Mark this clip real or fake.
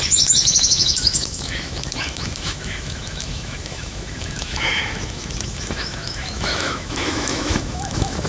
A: fake